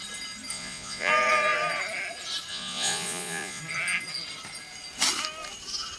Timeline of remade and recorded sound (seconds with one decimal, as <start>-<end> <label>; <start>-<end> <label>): 0.0-0.5 recorded; 0.5-1.1 remade; 1.1-2.5 recorded; 2.5-3.6 remade; 3.6-6.0 recorded